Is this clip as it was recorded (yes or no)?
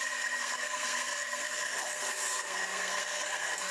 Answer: no